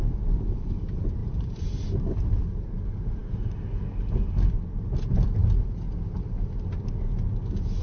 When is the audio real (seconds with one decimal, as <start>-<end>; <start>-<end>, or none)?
0.0-1.2; 2.0-7.8